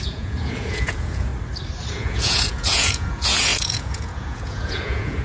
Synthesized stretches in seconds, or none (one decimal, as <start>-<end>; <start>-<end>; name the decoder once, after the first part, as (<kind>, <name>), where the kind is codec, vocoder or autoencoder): 0.0-1.3 (vocoder, Vocos); 1.9-5.2